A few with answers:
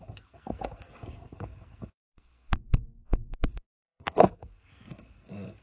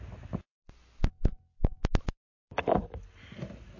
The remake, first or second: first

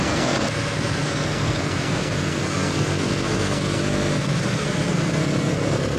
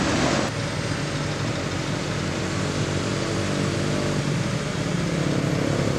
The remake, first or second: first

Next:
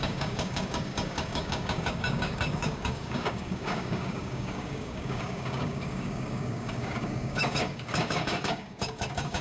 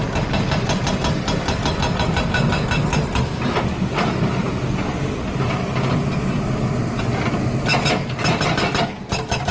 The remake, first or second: first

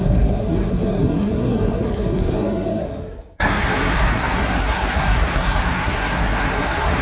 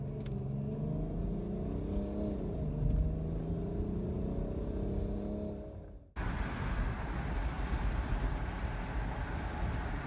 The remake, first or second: first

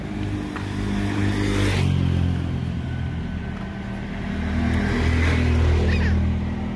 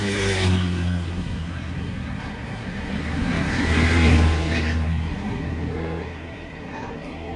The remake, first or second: second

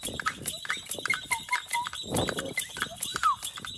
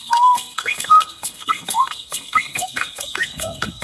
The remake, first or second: second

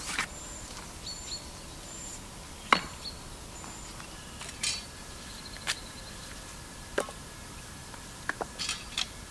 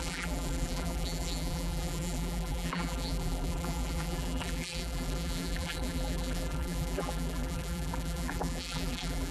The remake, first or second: second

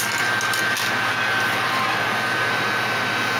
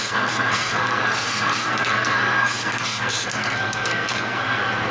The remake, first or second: second